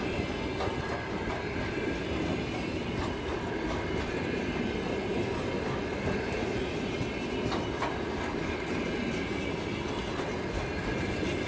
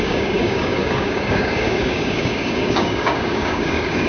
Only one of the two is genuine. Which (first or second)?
first